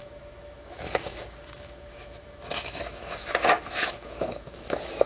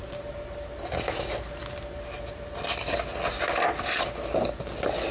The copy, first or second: first